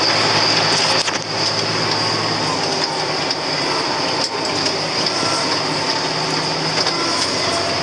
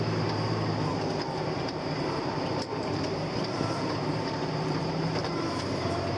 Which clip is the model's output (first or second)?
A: second